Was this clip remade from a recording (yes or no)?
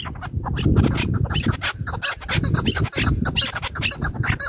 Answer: no